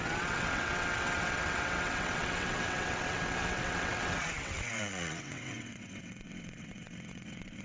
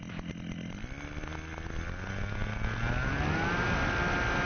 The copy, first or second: first